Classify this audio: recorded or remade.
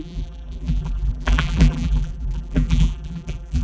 remade